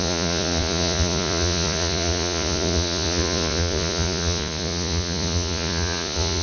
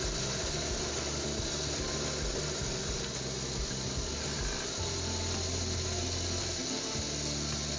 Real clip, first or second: second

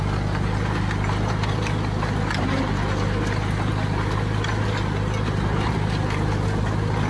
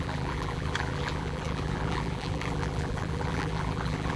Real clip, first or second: first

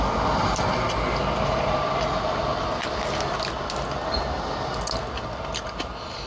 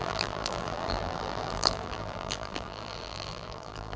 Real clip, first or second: first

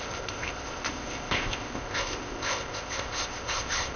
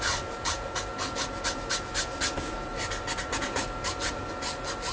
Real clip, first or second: second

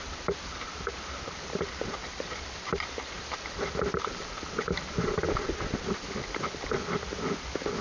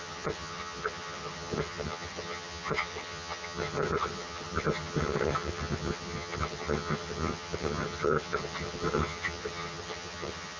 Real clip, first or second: first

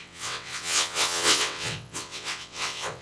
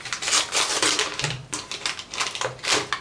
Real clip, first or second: second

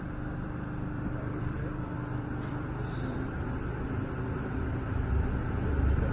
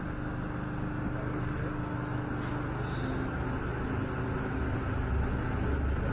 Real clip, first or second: second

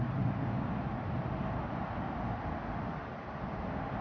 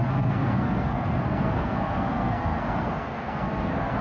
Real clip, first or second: first